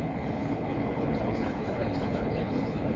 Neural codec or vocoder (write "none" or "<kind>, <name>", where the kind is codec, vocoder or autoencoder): codec, HILCodec